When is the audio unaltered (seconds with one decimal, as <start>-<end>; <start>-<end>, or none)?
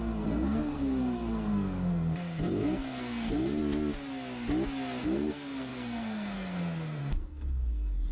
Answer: 3.6-5.0